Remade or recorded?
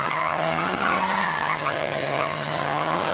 remade